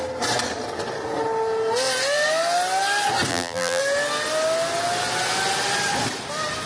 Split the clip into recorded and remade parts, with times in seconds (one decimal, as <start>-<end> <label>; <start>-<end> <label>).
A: 0.0-3.3 recorded; 3.3-3.8 remade; 3.8-6.7 recorded